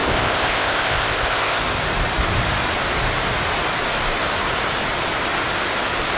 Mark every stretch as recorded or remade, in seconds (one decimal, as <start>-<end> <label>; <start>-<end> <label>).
0.0-1.6 remade; 1.6-6.2 recorded